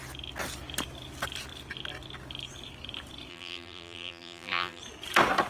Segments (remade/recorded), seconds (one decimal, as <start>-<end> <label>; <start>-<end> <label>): 0.0-3.3 recorded; 3.3-4.8 remade; 4.8-5.5 recorded